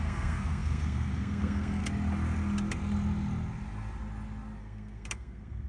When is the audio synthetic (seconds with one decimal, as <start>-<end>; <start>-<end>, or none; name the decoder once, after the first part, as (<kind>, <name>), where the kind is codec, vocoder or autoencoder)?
0.0-1.8 (codec, SNAC); 4.6-5.7

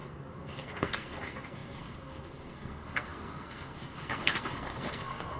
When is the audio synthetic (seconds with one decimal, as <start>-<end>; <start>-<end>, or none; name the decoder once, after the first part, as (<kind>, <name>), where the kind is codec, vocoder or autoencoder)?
0.0-5.4 (codec, SNAC)

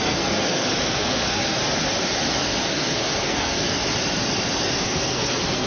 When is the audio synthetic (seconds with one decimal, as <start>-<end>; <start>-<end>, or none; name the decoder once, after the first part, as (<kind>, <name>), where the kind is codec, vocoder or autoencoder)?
0.0-1.6 (codec, SNAC); 2.3-3.8; 4.6-5.7

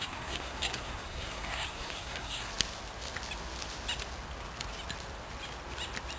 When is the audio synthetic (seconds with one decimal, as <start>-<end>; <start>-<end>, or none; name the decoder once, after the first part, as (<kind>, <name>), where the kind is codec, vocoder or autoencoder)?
0.0-2.5 (codec, SNAC)

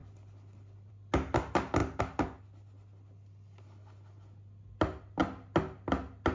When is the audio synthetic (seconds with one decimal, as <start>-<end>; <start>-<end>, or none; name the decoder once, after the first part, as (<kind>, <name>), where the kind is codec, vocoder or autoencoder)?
none

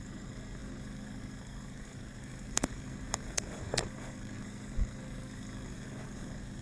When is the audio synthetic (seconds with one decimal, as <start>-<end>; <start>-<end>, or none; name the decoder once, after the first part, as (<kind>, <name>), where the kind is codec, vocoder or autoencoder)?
0.0-6.6 (codec, SNAC)

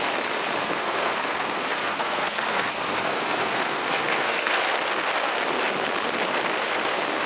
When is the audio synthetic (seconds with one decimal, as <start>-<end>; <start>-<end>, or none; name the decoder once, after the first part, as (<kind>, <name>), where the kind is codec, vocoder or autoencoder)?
0.6-4.6 (codec, SNAC)